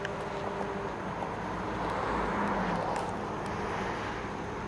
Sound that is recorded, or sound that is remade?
recorded